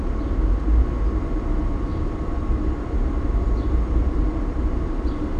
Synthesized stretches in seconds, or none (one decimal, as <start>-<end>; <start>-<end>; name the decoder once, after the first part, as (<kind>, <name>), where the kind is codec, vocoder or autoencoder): 1.9-5.4 (vocoder, BigVGAN v2)